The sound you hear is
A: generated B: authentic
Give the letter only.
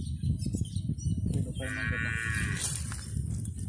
B